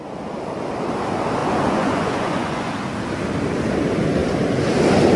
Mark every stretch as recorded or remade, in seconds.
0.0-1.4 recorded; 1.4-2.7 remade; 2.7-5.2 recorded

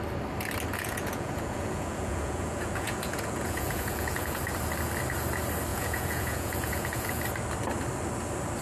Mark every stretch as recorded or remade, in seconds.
0.0-0.7 recorded; 0.7-4.4 remade; 4.4-5.7 recorded; 5.7-7.2 remade; 7.2-8.6 recorded